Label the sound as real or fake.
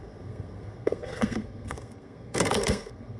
fake